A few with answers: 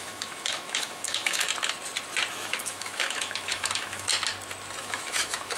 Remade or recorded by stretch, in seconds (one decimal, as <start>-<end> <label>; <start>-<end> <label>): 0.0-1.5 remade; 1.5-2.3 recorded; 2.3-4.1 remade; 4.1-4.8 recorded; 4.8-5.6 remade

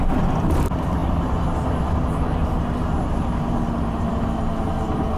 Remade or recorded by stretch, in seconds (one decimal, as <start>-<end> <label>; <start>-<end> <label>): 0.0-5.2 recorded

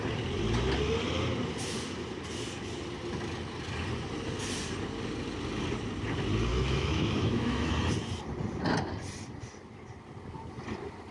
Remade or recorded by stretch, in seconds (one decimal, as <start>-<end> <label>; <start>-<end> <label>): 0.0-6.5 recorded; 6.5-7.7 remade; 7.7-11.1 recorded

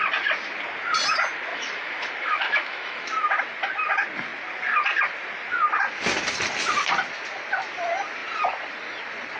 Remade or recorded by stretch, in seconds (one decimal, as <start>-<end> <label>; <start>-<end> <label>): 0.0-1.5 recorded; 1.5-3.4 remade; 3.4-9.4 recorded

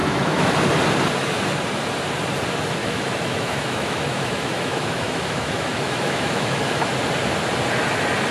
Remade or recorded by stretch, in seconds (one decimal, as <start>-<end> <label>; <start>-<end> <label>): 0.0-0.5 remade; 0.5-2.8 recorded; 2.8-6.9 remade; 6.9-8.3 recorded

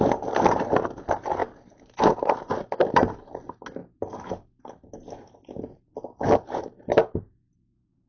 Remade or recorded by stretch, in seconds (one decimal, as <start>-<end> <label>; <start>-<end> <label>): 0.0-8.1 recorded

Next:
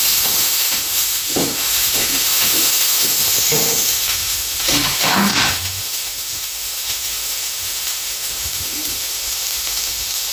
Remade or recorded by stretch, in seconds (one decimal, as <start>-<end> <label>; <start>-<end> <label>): 0.0-10.3 remade

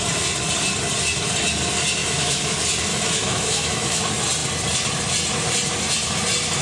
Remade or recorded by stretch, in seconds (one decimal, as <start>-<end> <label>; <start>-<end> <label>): 0.0-2.0 recorded; 2.0-2.5 remade; 2.5-2.9 recorded; 2.9-4.0 remade; 4.0-6.6 recorded